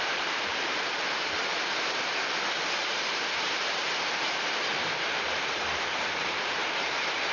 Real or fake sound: fake